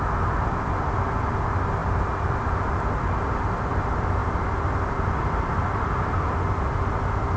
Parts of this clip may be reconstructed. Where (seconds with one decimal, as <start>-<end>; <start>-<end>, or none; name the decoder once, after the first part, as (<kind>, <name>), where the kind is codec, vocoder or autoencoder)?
none

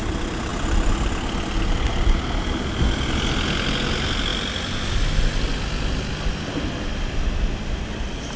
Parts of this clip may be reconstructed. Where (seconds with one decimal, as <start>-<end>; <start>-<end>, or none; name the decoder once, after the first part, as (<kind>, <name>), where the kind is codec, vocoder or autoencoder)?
none

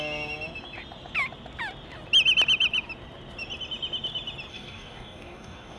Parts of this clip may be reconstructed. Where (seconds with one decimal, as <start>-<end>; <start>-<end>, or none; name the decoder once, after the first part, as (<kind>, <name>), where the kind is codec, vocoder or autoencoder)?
4.5-5.8 (codec, DAC)

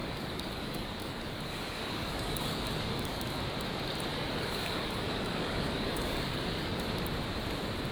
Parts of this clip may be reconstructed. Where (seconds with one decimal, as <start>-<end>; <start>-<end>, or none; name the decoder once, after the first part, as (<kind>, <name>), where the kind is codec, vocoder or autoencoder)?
0.0-3.4 (codec, DAC); 4.1-6.8

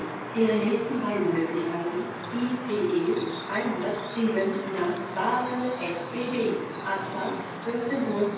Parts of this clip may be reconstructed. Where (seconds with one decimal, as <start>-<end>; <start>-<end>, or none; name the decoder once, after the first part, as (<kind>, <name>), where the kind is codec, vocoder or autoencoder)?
0.0-2.2 (codec, DAC); 2.7-5.0; 5.6-8.4

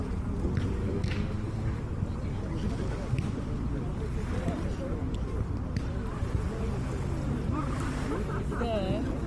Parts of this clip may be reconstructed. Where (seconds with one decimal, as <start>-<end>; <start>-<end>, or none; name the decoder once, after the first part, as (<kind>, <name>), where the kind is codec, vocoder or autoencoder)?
0.8-1.8 (codec, DAC)